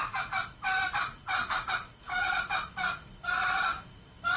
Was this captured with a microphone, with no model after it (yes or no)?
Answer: yes